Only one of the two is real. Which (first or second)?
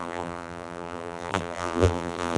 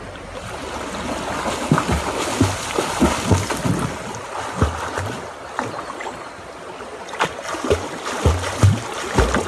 second